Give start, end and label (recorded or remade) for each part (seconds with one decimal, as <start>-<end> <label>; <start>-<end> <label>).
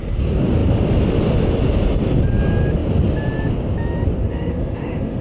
0.0-4.2 recorded; 4.2-5.2 remade